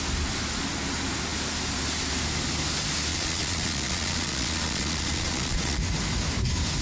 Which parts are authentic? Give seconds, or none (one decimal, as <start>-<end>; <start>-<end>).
0.0-3.1; 5.8-6.8